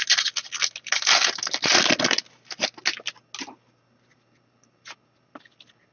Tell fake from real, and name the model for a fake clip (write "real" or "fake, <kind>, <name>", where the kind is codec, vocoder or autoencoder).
real